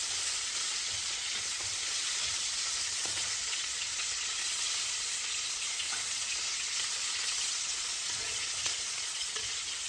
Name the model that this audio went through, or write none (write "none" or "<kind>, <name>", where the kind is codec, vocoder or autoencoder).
vocoder, Vocos